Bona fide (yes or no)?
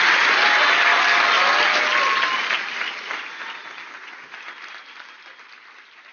yes